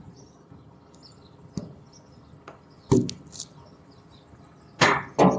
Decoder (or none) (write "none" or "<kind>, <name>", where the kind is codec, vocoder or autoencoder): none